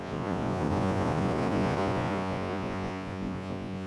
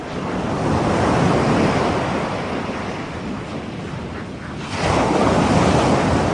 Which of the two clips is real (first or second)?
second